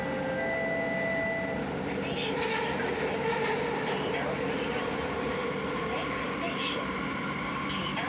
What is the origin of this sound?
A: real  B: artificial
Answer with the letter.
A